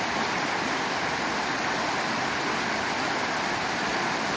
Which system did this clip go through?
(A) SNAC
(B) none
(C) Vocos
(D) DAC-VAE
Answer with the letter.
B